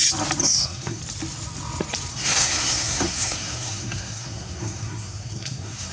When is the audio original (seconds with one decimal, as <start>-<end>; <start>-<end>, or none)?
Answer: 0.0-0.4; 1.0-2.1